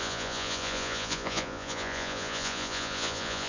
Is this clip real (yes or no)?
no